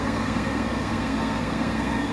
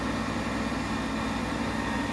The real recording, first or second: second